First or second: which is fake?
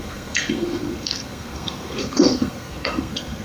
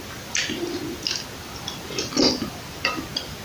first